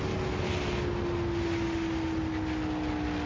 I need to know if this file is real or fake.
real